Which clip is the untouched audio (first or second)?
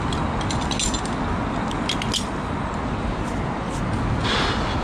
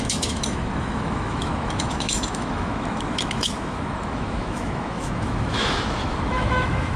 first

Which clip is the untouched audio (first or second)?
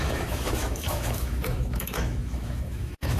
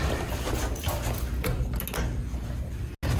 second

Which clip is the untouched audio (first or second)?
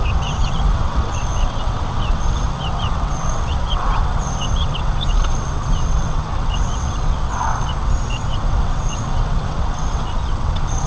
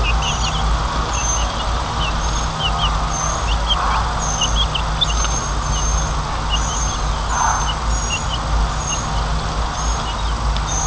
second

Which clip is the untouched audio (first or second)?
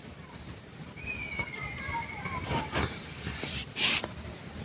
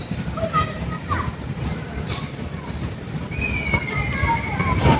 second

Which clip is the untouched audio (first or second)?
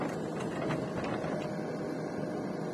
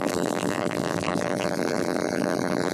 first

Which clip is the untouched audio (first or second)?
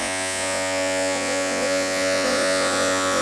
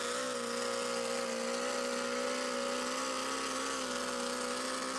second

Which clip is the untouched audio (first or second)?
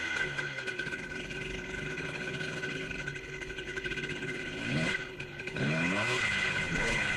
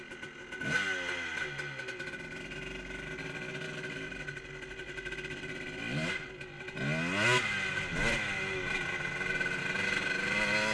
second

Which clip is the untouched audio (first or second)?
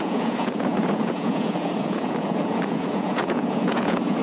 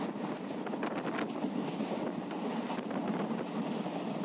second